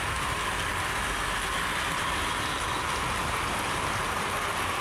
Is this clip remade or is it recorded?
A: recorded